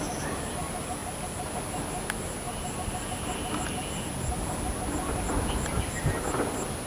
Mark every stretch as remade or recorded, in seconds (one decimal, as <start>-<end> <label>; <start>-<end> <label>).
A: 0.0-6.9 recorded